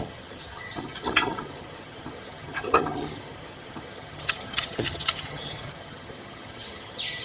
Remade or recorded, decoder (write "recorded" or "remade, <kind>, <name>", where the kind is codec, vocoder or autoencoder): remade, vocoder, HiFi-GAN